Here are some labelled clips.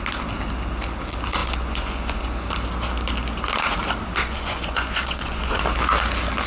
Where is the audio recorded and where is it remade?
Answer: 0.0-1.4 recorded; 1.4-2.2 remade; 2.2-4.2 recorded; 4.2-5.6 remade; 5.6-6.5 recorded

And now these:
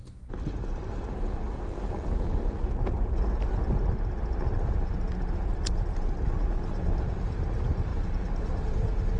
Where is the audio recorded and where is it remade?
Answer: 0.0-9.2 recorded